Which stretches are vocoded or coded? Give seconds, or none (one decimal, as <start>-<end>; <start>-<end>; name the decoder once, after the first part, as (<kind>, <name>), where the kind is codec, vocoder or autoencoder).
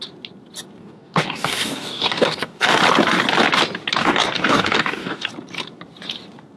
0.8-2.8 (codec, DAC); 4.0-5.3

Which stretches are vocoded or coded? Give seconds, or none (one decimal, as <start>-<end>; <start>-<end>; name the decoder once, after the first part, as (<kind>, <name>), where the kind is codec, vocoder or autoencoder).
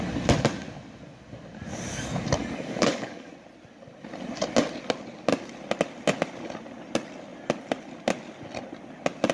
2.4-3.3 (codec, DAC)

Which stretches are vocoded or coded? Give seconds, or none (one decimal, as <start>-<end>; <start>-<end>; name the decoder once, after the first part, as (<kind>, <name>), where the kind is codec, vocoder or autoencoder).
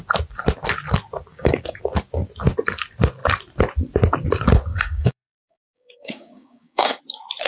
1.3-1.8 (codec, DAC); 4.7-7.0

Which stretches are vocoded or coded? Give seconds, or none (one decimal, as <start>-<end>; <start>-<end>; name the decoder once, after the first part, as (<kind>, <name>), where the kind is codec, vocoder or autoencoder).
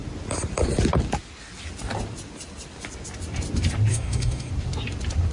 3.9-4.5 (codec, DAC)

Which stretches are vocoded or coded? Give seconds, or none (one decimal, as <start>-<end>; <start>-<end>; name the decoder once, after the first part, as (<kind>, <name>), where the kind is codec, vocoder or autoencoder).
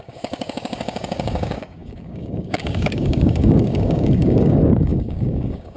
0.0-5.8 (codec, DAC)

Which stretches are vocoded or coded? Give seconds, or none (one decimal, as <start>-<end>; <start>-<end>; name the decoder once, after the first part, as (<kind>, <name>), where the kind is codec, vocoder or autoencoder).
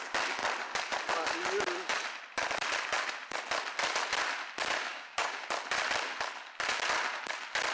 4.9-5.4 (codec, DAC)